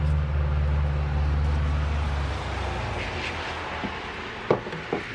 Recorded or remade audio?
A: recorded